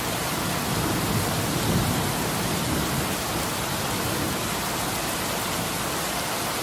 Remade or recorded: recorded